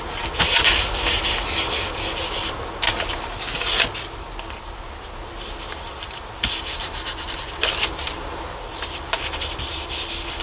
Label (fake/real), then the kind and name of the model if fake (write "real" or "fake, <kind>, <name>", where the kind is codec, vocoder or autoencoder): real